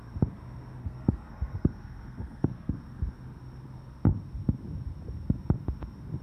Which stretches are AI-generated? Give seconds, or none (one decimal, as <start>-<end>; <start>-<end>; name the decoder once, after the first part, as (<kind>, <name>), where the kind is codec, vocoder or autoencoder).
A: 0.8-2.7 (codec, SNAC)